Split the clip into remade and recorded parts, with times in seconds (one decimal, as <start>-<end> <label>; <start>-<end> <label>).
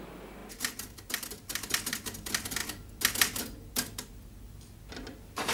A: 0.0-5.5 recorded